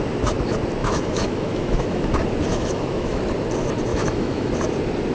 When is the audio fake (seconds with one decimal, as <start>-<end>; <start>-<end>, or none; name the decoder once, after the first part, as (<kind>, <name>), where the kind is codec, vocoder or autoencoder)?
0.8-2.1 (autoencoder, DAC-VAE); 2.5-3.2; 3.9-4.5